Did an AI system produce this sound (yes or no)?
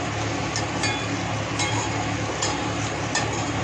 no